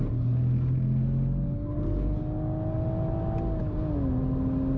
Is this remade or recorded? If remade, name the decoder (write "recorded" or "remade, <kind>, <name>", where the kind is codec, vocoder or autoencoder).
recorded